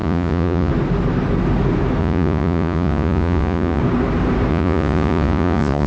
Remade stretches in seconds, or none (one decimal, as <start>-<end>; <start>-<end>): 0.0-0.7; 2.0-3.8; 4.5-5.9